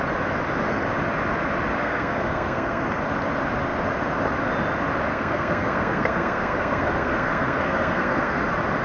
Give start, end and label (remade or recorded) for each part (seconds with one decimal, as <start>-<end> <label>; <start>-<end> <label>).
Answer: 0.0-1.8 recorded; 1.8-2.8 remade; 2.8-5.1 recorded; 5.1-8.4 remade; 8.4-8.8 recorded